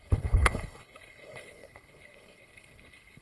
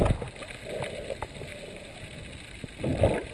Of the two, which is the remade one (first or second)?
first